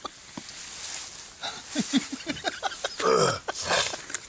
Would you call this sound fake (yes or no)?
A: no